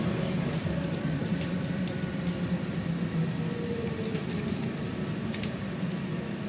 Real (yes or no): no